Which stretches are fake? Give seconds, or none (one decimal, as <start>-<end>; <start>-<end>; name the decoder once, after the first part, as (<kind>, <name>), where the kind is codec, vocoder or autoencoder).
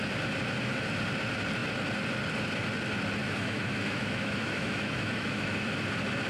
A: 3.2-5.7 (autoencoder, DAC-VAE)